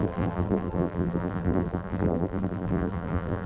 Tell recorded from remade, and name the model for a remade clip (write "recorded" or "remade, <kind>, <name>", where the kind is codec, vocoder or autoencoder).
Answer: remade, vocoder, BigVGAN v2